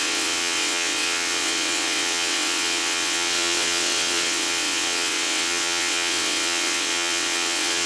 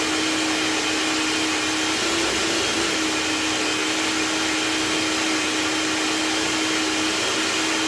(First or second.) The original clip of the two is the second